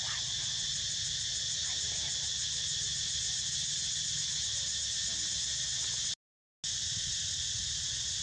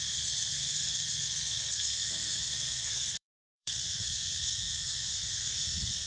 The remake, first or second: second